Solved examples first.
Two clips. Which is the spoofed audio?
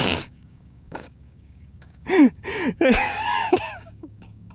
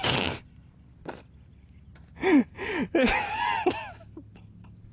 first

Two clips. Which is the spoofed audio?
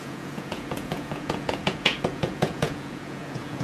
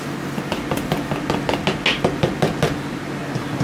first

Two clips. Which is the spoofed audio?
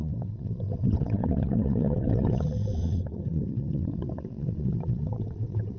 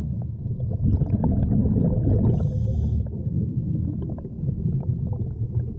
first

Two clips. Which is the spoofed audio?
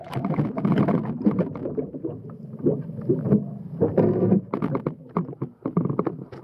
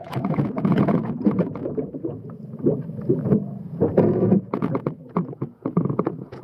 second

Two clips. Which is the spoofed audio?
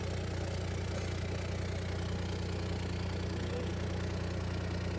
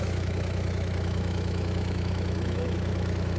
second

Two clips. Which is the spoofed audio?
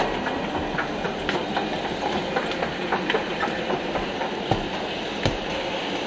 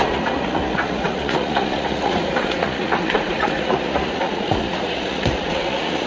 second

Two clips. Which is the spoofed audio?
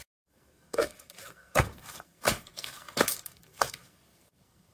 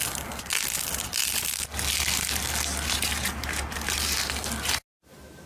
first